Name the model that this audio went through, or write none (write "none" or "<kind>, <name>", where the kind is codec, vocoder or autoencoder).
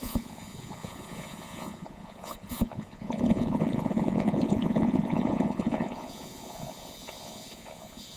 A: vocoder, Vocos